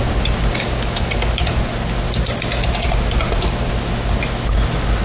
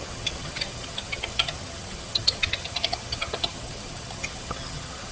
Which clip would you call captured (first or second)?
first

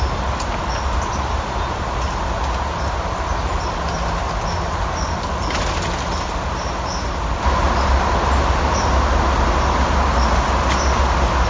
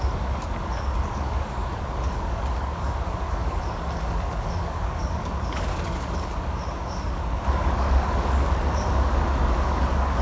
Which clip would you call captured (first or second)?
first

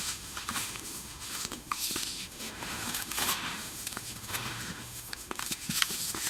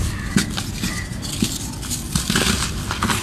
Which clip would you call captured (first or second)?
second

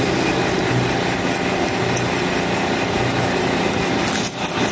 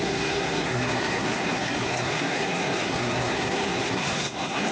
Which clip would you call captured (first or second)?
first